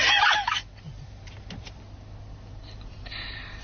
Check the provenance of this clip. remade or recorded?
recorded